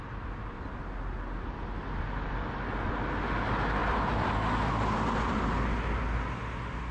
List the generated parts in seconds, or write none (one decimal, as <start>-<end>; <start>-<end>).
3.8-4.3